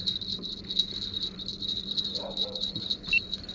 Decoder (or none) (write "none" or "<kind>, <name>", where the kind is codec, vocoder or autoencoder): none